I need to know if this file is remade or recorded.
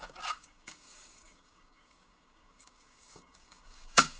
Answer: remade